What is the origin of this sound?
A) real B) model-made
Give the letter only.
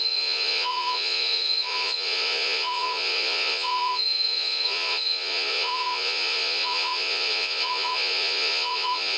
B